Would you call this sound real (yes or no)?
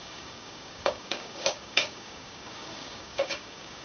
no